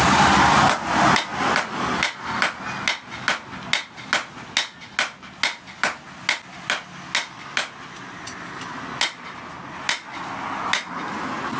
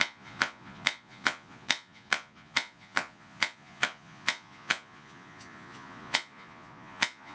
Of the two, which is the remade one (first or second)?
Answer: second